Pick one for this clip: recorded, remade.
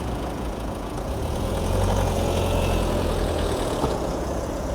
remade